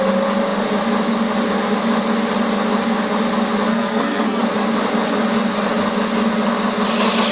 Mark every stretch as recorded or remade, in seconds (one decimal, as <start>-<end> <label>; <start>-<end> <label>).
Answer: 0.0-3.7 recorded; 3.7-4.4 remade; 4.4-7.3 recorded